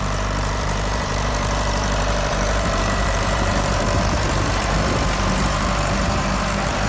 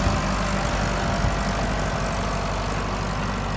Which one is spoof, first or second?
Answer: first